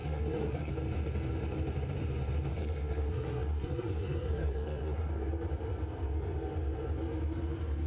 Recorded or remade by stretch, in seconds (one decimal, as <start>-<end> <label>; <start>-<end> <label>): 0.0-0.7 remade; 0.7-2.5 recorded; 2.5-5.1 remade; 5.1-7.9 recorded